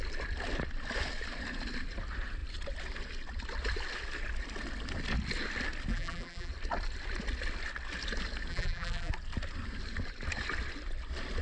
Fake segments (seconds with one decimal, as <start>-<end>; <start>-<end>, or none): 5.9-6.5; 8.5-9.1